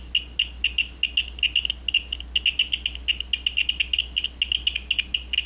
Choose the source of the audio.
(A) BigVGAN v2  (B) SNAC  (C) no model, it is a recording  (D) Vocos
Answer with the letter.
C